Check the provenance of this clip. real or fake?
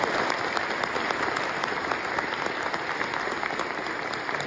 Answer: real